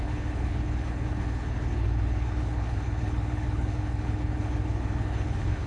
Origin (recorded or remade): remade